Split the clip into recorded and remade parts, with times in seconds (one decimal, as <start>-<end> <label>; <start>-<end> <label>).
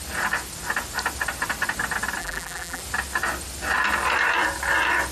0.0-2.2 recorded; 2.2-2.8 remade; 2.8-5.1 recorded